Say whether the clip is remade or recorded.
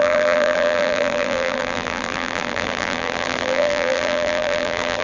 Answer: remade